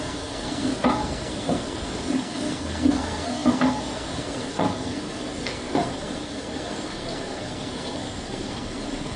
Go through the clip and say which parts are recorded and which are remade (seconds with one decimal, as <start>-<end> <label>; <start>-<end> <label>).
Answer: 0.0-9.2 remade